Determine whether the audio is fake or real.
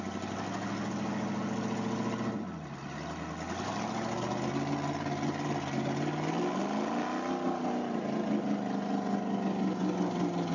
real